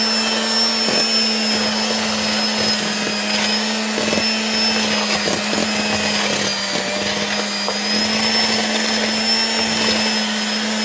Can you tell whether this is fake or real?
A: real